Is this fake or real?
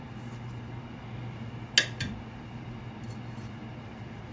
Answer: real